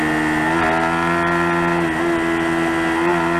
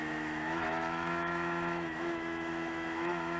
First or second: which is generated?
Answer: second